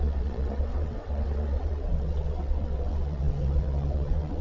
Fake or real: fake